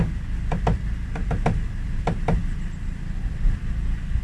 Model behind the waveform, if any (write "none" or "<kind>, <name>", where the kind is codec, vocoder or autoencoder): none